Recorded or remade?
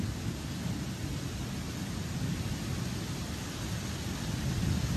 recorded